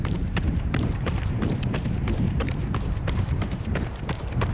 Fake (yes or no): yes